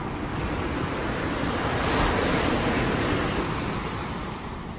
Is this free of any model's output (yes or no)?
yes